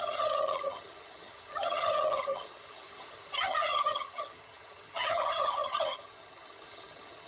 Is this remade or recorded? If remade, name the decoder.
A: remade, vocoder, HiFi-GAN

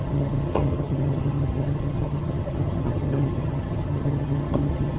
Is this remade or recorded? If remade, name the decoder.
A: remade, vocoder, HiFi-GAN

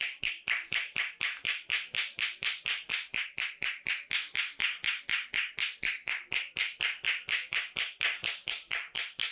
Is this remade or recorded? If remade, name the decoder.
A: recorded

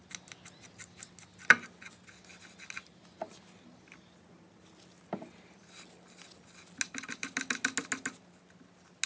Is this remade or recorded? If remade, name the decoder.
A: recorded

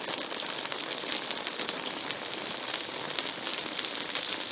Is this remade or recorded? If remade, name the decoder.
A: recorded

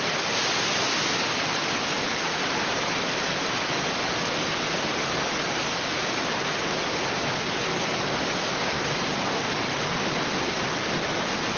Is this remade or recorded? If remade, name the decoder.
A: recorded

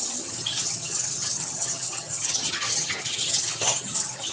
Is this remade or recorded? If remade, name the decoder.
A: remade, vocoder, HiFi-GAN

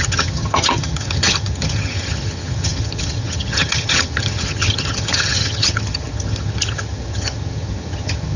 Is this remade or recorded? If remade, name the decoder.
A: remade, vocoder, HiFi-GAN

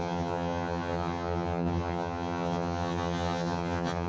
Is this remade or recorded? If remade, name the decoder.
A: remade, vocoder, HiFi-GAN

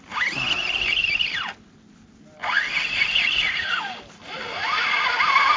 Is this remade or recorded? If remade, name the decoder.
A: recorded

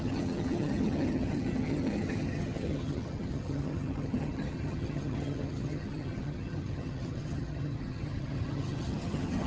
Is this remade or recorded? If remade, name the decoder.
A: remade, vocoder, HiFi-GAN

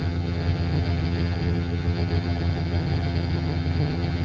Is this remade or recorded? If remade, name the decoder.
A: remade, vocoder, HiFi-GAN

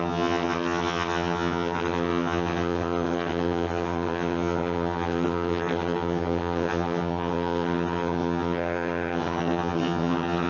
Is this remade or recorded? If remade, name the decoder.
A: remade, vocoder, HiFi-GAN